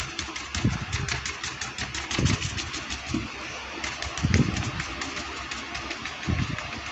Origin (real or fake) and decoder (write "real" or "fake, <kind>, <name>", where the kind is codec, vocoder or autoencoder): real